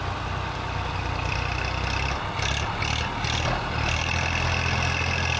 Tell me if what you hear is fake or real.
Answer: real